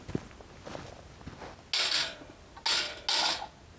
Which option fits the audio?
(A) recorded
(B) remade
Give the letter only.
A